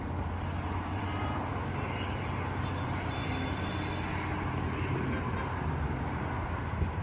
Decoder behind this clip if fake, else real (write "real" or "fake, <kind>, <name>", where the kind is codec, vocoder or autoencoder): real